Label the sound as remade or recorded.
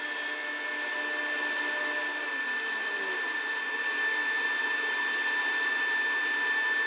recorded